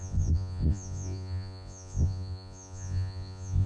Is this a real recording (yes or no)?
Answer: no